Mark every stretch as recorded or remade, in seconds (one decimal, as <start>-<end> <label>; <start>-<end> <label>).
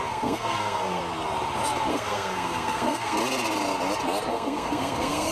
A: 0.0-1.0 remade; 1.0-1.9 recorded; 1.9-3.2 remade; 3.2-4.3 recorded; 4.3-5.3 remade